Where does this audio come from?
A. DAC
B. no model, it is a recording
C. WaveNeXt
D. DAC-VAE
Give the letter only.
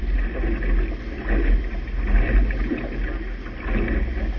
B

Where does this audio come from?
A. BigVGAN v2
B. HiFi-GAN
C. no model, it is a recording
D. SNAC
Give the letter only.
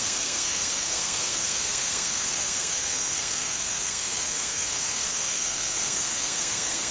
D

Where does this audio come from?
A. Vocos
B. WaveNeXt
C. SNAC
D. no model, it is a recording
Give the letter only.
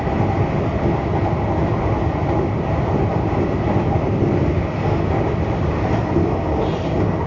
D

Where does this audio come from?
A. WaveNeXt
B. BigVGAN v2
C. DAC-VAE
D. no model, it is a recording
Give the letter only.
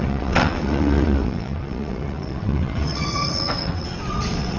A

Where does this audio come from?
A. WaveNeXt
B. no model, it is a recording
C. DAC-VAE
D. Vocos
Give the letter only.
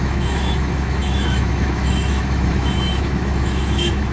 C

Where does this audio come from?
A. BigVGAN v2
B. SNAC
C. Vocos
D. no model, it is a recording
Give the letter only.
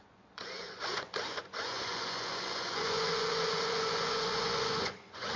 C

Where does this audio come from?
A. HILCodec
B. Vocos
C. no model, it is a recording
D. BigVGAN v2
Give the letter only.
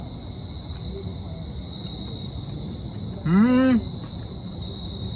C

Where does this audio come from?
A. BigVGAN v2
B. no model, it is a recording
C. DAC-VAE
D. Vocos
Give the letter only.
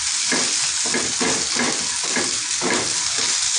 B